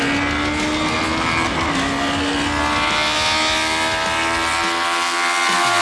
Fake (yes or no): no